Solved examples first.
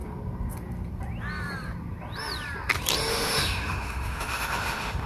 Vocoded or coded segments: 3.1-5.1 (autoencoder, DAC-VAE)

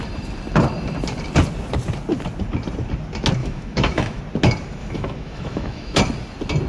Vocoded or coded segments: 3.4-4.2 (autoencoder, DAC-VAE); 4.8-6.0

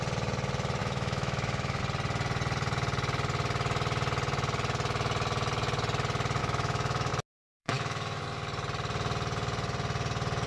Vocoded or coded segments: 0.8-1.8 (autoencoder, DAC-VAE); 6.4-7.1; 7.6-8.2

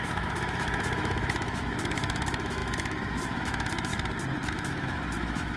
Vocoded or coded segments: 0.0-3.9 (autoencoder, DAC-VAE); 4.5-5.6